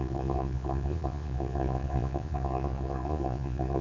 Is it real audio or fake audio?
fake